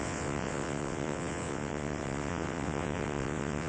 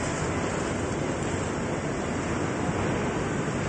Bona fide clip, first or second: second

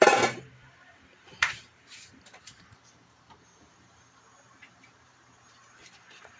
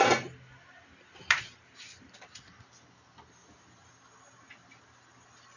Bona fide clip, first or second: second